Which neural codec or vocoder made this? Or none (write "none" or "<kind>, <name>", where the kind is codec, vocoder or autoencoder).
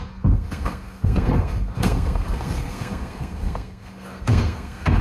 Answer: codec, SNAC